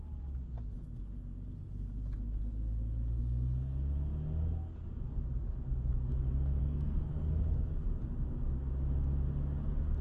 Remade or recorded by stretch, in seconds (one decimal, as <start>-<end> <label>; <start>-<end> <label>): 0.0-6.6 recorded; 6.6-7.4 remade; 7.4-10.0 recorded